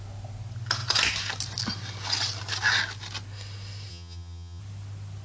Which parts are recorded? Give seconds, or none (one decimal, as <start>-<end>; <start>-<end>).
0.0-3.9; 4.6-5.2